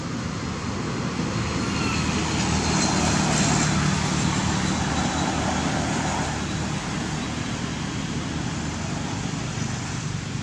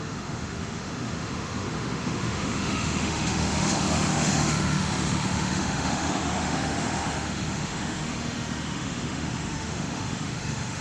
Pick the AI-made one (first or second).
second